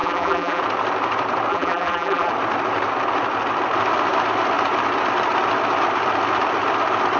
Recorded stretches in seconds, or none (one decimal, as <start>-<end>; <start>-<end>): 0.6-1.5; 2.3-7.2